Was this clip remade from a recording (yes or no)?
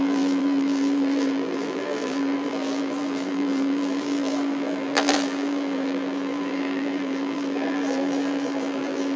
yes